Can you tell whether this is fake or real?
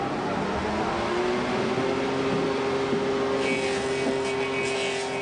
real